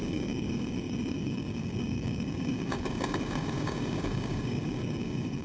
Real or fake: fake